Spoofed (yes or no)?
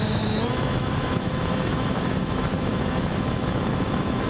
yes